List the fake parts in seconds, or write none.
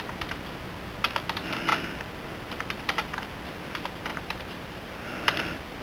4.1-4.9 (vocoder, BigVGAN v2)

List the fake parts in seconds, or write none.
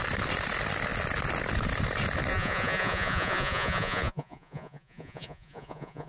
2.3-6.1 (vocoder, Vocos)